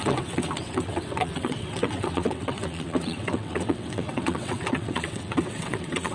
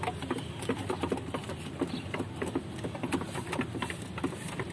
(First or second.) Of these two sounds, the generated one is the first